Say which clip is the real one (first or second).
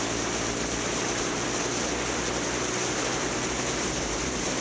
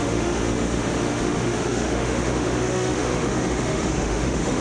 first